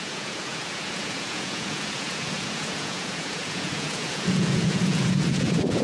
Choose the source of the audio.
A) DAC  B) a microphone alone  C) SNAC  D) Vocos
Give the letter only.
D